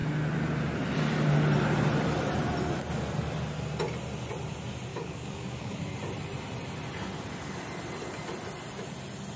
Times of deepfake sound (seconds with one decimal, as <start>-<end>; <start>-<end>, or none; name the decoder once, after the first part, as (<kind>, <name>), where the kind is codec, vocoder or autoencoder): 4.9-5.8 (codec, DAC)